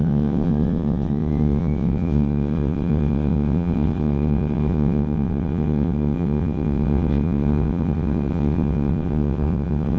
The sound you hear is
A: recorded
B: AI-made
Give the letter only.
B